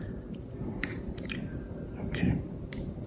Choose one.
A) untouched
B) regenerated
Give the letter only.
B